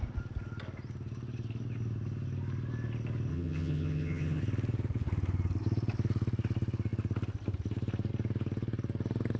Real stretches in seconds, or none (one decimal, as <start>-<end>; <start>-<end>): 0.0-3.3; 4.4-9.4